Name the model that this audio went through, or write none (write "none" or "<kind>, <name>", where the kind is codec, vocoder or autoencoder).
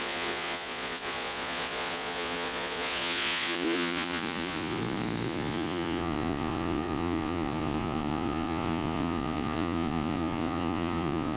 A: vocoder, Vocos